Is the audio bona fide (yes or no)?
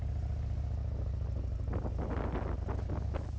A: yes